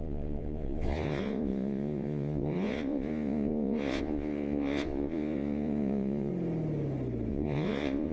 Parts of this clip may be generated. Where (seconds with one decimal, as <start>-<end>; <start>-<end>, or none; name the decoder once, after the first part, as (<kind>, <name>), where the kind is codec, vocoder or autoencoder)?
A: 0.0-6.3 (vocoder, Vocos); 7.3-8.1